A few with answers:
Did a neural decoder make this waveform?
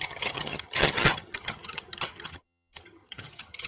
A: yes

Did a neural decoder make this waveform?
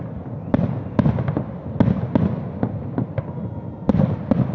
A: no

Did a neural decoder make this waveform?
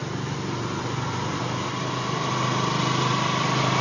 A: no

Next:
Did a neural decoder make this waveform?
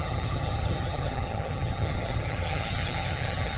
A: yes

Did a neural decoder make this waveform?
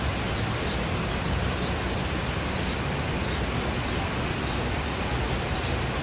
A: no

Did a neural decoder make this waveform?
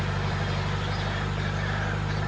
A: no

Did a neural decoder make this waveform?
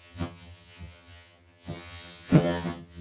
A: yes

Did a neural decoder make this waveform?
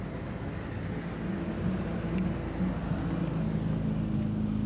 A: no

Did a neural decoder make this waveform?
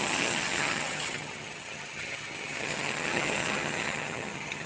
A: yes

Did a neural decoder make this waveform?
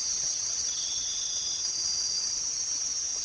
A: yes